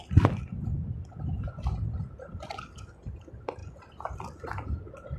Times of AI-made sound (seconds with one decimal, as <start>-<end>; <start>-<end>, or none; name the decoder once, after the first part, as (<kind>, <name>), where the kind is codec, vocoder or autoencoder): 3.1-3.6 (vocoder, BigVGAN v2)

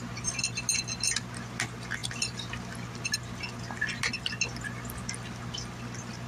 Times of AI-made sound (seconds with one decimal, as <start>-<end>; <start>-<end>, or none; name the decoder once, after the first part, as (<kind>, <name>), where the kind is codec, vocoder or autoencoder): none

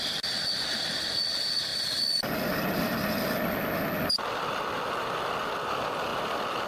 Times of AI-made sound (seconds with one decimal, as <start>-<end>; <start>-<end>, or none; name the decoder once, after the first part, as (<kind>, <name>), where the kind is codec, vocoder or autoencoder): none

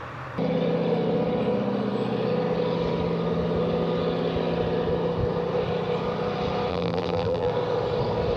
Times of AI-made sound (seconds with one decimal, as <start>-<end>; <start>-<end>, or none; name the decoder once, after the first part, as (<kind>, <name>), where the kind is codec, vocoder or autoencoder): 6.7-7.5 (vocoder, BigVGAN v2)

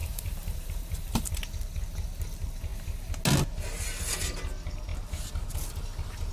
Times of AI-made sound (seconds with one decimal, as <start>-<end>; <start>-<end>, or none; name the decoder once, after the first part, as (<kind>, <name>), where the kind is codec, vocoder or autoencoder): 0.0-1.3 (vocoder, BigVGAN v2)

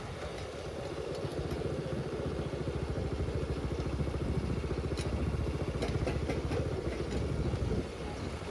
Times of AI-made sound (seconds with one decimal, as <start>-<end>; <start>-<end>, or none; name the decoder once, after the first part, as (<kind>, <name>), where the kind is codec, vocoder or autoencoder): none

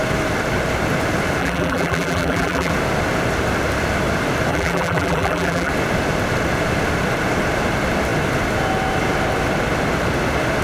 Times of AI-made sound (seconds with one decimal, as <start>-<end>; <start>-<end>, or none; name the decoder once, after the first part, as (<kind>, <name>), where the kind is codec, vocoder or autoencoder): 1.4-2.7 (vocoder, BigVGAN v2); 4.5-5.7